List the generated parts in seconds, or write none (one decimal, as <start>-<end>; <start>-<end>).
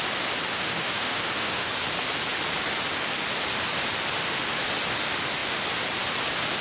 0.5-1.7